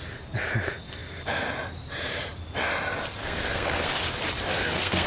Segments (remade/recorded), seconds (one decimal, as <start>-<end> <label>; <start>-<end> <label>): 0.0-3.2 recorded; 3.2-3.9 remade; 3.9-4.6 recorded; 4.6-5.1 remade

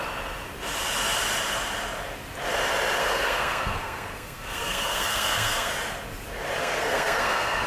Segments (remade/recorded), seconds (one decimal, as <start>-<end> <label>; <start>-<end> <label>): 0.0-3.0 recorded; 3.0-5.7 remade; 5.7-6.6 recorded; 6.6-7.7 remade

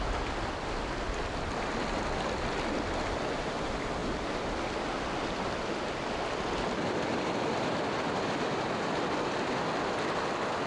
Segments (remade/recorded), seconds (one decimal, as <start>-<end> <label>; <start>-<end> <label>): 0.0-10.7 recorded

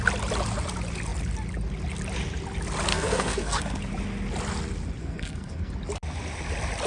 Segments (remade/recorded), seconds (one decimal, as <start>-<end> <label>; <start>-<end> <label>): 0.0-2.9 recorded; 2.9-3.8 remade; 3.8-5.0 recorded; 5.0-5.7 remade; 5.7-6.9 recorded

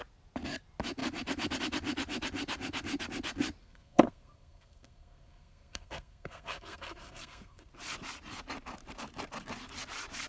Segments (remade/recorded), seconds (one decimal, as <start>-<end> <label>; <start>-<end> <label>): 0.0-3.6 recorded; 3.6-7.7 remade; 7.7-10.3 recorded

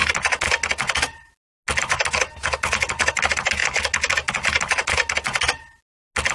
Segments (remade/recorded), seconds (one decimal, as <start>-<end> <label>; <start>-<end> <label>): 0.0-6.3 recorded